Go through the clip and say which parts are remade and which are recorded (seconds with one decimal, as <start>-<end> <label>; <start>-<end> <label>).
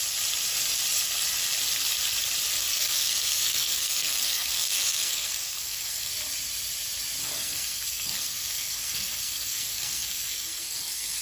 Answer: 0.0-2.7 recorded; 2.7-6.1 remade; 6.1-7.2 recorded; 7.2-11.2 remade